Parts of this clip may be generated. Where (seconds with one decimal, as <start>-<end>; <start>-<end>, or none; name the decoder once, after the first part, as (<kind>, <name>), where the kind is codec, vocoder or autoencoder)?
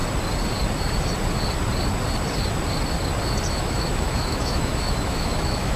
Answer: 3.5-5.8 (autoencoder, DAC-VAE)